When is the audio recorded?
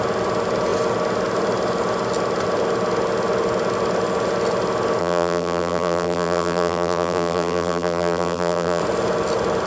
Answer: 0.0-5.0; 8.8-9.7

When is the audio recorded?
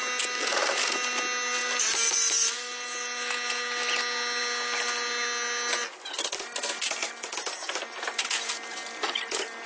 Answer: 0.0-9.7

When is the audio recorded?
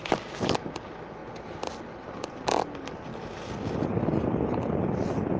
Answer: 0.0-5.4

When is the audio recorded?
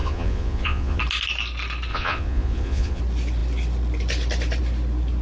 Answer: 1.0-1.9; 3.0-5.2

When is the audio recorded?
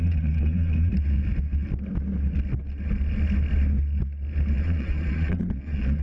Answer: 0.9-4.5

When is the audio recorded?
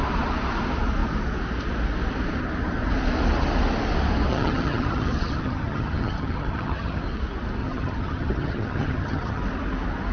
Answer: 0.0-4.3; 7.0-7.6; 9.4-10.1